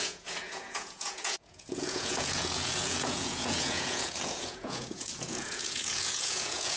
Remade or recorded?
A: remade